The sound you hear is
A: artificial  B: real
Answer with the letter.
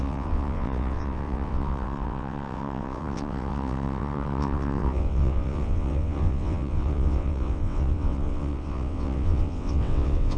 A